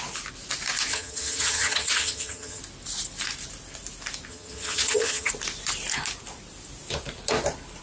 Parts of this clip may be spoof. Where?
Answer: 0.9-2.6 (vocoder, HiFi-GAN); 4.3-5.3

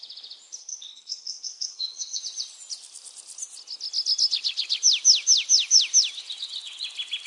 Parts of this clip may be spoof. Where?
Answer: 0.6-2.2 (codec, SNAC)

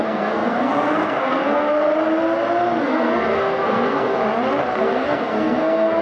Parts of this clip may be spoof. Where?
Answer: 0.0-1.9 (codec, SNAC); 2.8-4.2; 4.8-6.0

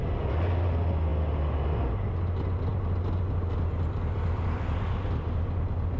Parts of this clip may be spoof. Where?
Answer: none

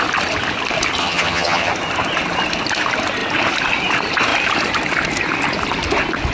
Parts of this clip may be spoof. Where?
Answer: 1.0-1.7 (vocoder, HiFi-GAN)

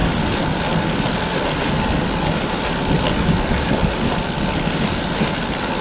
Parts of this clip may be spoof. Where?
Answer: none